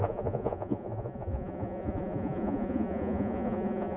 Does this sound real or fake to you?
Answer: fake